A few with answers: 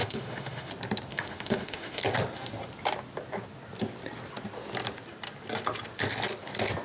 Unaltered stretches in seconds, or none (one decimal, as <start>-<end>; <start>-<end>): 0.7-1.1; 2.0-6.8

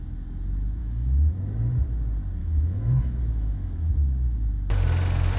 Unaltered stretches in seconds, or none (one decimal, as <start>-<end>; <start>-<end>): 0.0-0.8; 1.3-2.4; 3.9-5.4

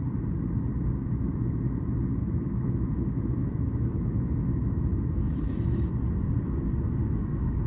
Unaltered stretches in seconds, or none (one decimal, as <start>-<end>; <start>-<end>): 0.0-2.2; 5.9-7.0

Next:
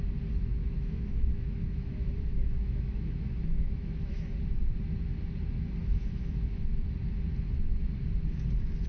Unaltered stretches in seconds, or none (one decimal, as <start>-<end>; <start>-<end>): 0.0-0.6; 4.2-5.8; 6.7-8.9

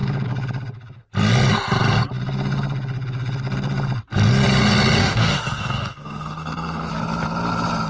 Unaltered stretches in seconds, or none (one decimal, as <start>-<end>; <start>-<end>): 0.0-5.0; 6.9-7.9

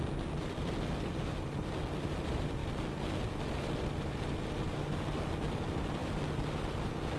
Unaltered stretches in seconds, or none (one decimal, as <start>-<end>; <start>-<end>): 0.0-7.2

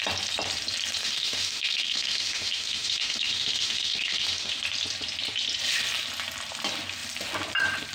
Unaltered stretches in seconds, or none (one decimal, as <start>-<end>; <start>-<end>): 0.0-1.0; 4.6-7.9